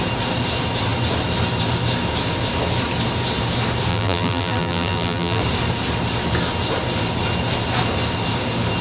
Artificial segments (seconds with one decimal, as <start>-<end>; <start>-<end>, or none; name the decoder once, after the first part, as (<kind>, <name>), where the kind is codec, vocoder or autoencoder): 3.9-5.4 (vocoder, BigVGAN v2)